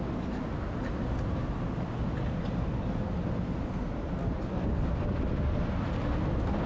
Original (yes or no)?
yes